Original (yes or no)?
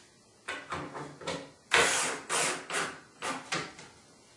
yes